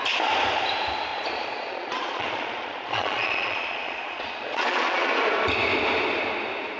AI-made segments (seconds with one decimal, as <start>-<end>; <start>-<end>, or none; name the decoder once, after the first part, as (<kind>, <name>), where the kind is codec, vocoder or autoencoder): 1.1-5.2 (vocoder, Vocos)